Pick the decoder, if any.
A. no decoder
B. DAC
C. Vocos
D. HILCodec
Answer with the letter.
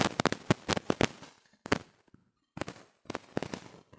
A